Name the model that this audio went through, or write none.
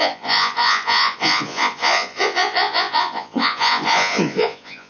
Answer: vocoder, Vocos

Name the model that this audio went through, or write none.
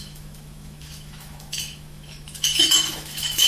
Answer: autoencoder, DAC-VAE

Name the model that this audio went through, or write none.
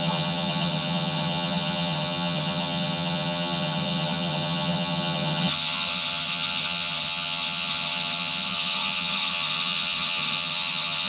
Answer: vocoder, HiFi-GAN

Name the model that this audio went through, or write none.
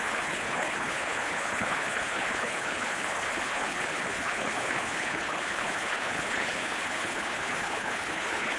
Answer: codec, HILCodec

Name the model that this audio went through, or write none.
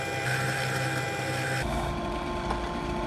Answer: none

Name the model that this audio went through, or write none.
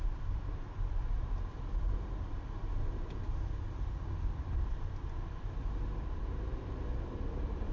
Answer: vocoder, BigVGAN v2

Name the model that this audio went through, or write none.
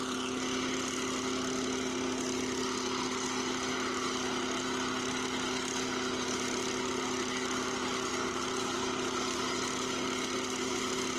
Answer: none